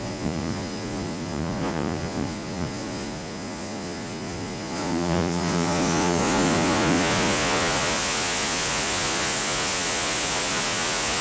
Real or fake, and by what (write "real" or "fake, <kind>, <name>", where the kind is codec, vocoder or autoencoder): fake, vocoder, Vocos